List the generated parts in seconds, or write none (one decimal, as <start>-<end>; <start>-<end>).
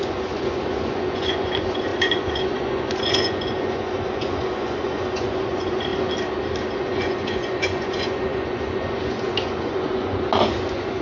0.0-5.9; 6.8-11.0